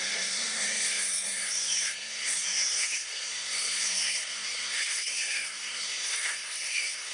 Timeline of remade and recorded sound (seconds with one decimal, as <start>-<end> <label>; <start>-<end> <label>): 0.0-7.1 remade